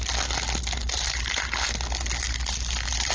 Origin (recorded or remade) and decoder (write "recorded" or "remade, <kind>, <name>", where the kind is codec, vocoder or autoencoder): recorded